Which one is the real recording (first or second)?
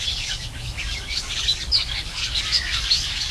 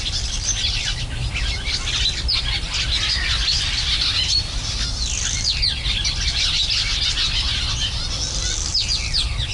second